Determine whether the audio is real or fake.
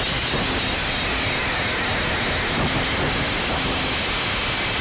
real